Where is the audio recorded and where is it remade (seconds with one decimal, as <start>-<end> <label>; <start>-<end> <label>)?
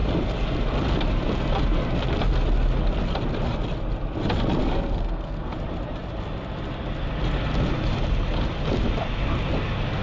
0.0-4.6 recorded; 4.6-5.5 remade; 5.5-10.0 recorded